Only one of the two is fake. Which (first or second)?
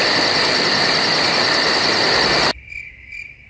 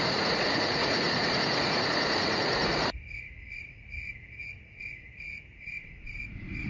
second